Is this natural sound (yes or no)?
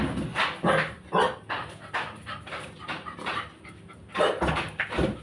yes